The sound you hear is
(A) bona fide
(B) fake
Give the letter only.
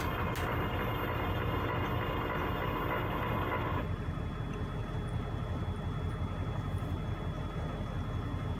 A